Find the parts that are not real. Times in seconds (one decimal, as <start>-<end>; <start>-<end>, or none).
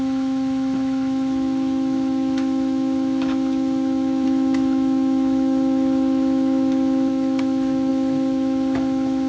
0.0-9.3